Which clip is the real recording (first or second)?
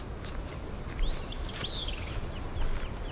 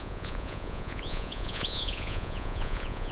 first